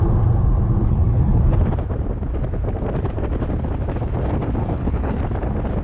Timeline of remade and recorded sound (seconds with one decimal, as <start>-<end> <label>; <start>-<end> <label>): 0.0-0.8 recorded; 0.8-1.4 remade; 1.4-4.6 recorded; 4.6-5.2 remade; 5.2-5.8 recorded